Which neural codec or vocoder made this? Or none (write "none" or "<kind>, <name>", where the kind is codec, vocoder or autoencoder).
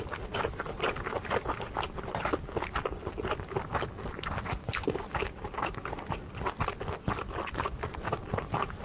none